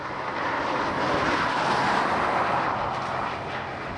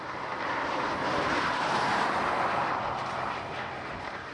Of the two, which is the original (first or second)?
first